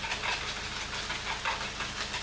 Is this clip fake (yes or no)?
no